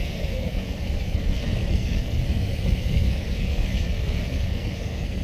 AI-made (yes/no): yes